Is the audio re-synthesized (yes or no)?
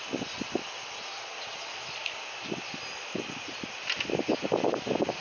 no